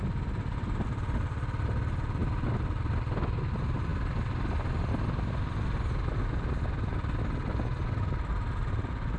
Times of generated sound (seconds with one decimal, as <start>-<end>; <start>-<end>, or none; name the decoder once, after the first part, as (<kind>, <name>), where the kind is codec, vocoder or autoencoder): none